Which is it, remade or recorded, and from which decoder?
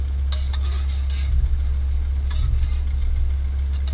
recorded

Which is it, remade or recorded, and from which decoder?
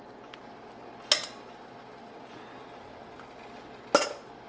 recorded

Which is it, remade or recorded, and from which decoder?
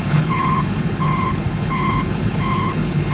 remade, codec, HILCodec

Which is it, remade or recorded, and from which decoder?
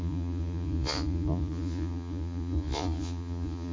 remade, vocoder, Vocos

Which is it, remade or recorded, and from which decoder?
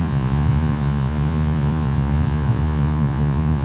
remade, vocoder, Vocos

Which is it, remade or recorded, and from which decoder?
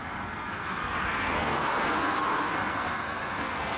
remade, codec, SNAC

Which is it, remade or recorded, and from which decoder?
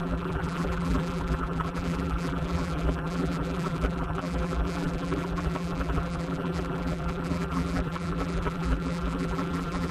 remade, vocoder, BigVGAN v2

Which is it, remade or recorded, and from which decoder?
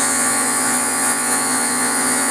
remade, vocoder, Vocos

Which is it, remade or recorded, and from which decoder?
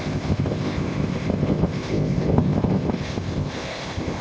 remade, codec, ZipCodec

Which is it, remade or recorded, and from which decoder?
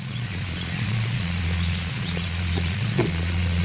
remade, vocoder, Vocos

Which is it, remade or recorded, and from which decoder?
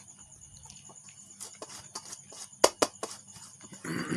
recorded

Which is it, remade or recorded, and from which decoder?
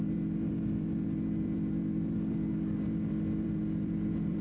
remade, vocoder, BigVGAN v2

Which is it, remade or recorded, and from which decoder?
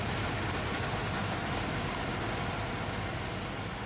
recorded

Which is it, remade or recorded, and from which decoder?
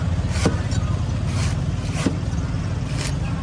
recorded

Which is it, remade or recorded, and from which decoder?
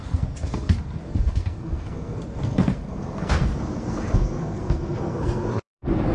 remade, codec, SNAC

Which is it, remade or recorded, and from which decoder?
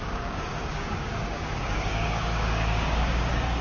remade, codec, DAC